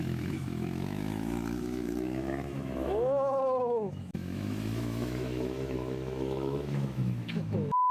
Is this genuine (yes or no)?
no